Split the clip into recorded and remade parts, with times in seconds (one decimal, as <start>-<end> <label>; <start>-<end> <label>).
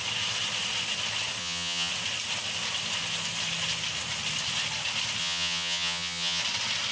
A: 0.0-1.4 recorded; 1.4-1.9 remade; 1.9-5.2 recorded; 5.2-6.4 remade; 6.4-6.9 recorded